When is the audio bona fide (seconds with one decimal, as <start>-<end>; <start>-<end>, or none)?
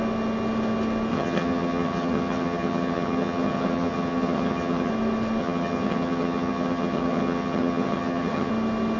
0.0-1.1; 4.9-5.4; 8.5-9.0